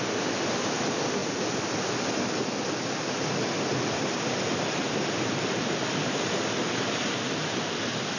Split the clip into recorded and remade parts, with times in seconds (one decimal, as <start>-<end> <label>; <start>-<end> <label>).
0.0-8.2 recorded